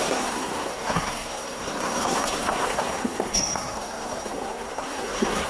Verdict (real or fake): fake